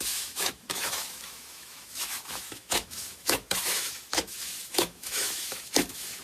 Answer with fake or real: fake